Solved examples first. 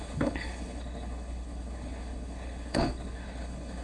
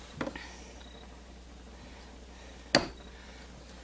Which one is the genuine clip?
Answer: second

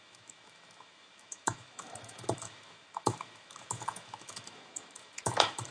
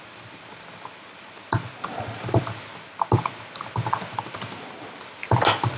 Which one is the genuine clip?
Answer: second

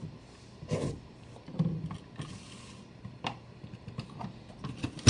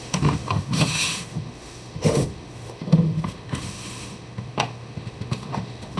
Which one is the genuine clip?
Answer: first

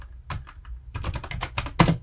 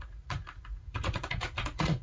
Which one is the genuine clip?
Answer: first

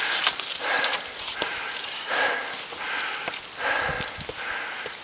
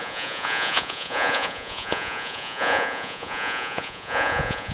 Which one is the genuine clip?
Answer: first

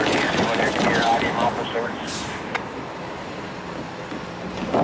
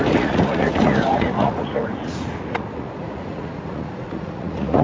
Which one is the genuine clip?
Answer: first